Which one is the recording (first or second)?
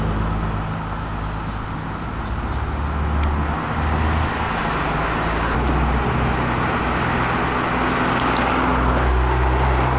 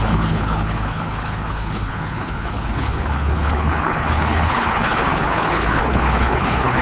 first